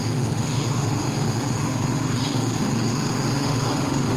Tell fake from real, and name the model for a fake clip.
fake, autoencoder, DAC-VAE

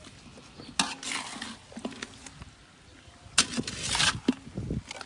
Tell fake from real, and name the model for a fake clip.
real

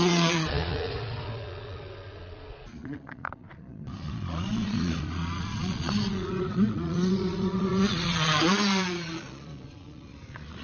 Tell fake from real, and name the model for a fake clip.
fake, vocoder, Vocos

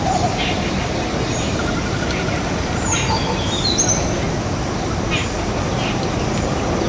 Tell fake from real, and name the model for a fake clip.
real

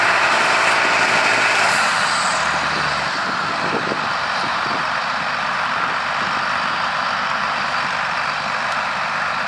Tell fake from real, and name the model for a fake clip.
fake, vocoder, BigVGAN v2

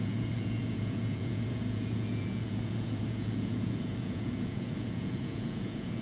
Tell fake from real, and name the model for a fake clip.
fake, vocoder, Vocos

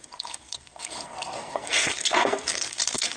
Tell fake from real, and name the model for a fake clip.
fake, codec, SNAC